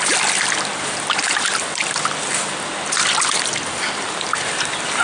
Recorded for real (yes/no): yes